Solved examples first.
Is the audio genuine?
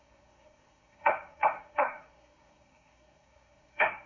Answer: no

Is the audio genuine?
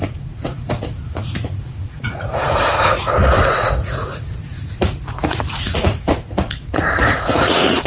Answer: no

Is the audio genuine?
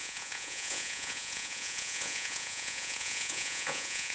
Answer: no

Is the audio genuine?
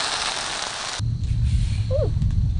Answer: yes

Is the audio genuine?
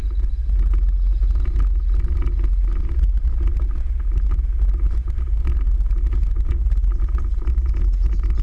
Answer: yes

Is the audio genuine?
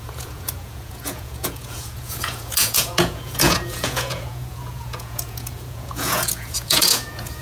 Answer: no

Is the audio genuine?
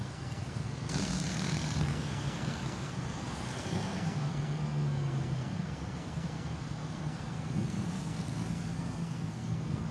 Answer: no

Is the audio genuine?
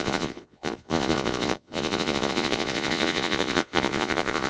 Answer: no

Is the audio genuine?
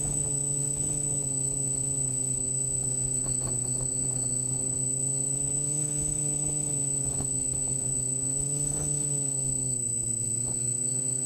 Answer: no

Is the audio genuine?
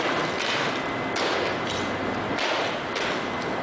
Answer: yes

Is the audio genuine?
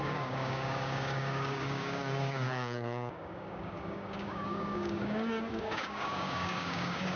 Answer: no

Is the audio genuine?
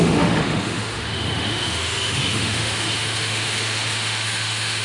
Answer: no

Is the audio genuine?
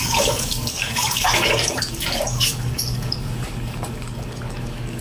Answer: no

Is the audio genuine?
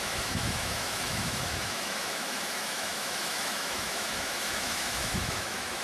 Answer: no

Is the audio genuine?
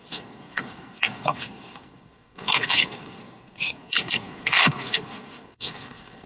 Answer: no